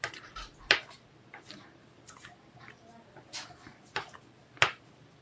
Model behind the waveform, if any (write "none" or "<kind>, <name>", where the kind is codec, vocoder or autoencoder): none